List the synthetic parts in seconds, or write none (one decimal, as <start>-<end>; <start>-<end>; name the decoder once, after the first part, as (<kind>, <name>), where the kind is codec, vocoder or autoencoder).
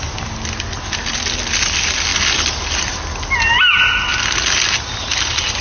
none